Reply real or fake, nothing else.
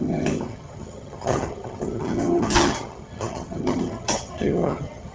fake